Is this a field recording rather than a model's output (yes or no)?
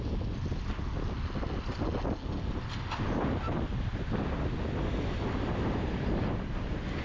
yes